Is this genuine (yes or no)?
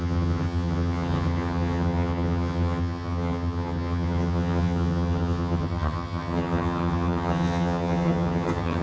no